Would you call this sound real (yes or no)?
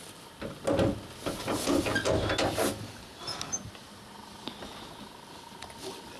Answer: yes